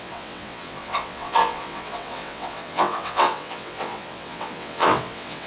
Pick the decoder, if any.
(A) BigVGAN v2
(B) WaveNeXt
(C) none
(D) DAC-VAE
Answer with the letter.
B